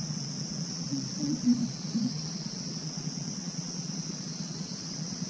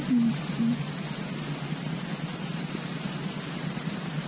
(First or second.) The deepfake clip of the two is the first